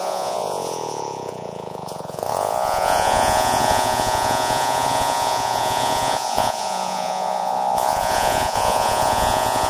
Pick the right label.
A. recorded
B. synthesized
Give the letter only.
B